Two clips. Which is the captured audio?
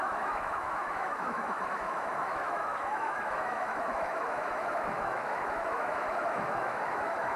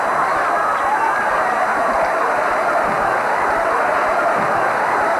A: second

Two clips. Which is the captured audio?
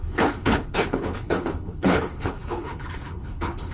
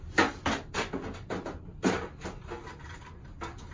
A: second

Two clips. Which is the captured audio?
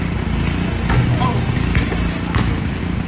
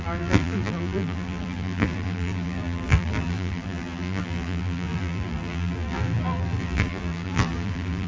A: first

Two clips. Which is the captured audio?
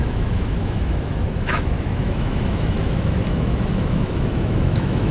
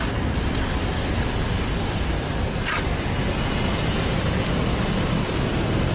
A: second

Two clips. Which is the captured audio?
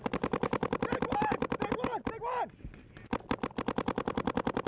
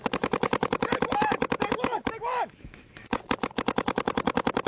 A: first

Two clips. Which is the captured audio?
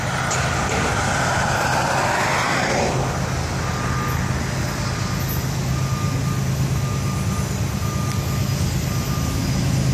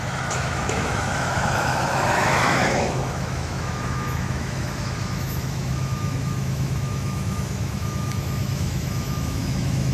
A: first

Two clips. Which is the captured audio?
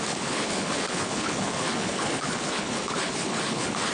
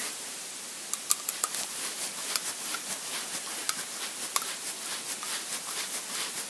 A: second